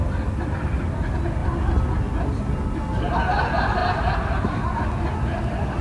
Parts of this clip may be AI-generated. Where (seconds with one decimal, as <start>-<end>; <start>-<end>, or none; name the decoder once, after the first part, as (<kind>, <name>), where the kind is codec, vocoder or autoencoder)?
3.8-4.5 (vocoder, BigVGAN v2)